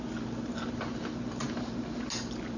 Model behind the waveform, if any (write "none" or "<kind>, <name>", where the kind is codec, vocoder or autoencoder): none